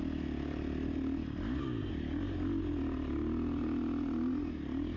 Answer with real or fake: real